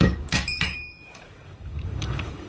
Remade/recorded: remade